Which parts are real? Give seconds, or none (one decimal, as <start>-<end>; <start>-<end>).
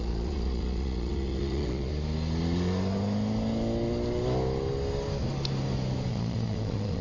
1.9-6.1